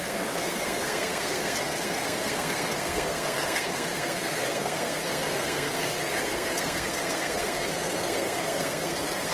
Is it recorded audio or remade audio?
remade